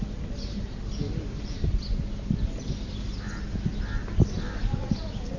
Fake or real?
real